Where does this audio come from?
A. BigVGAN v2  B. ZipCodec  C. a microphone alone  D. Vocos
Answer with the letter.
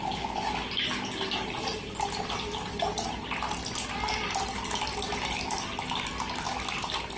C